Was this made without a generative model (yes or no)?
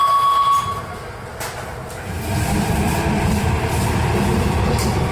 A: yes